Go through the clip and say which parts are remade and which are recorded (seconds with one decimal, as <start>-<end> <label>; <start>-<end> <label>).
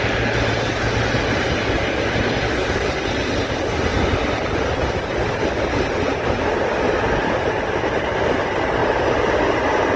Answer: 0.0-10.0 recorded